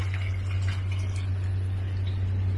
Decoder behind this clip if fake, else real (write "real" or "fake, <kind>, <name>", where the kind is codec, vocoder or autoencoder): real